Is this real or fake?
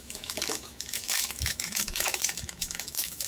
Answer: fake